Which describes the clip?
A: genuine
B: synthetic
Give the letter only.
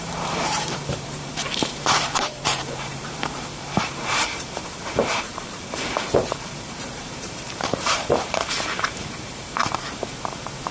B